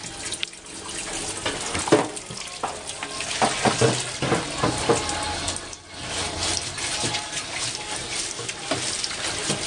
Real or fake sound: real